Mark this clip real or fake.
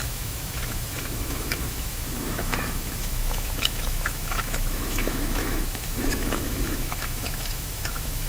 fake